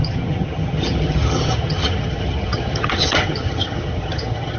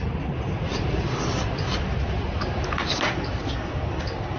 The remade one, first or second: first